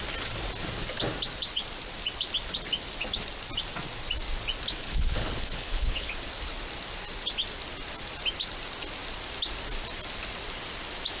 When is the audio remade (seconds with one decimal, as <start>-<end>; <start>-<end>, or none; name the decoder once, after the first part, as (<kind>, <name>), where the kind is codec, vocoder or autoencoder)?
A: 4.8-6.1 (codec, HILCodec)